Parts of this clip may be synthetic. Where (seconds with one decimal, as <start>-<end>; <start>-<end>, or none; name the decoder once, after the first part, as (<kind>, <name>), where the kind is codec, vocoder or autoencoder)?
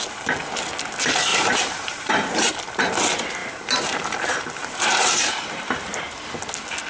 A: 1.3-2.5 (vocoder, BigVGAN v2); 3.4-6.0